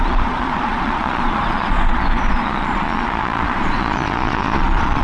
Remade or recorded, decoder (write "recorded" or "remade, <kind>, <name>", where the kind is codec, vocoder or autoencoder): remade, vocoder, Vocos